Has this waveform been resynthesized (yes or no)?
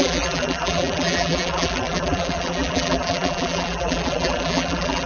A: yes